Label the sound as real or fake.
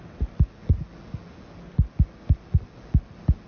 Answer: real